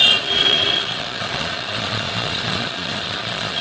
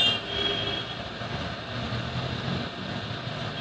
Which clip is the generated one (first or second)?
first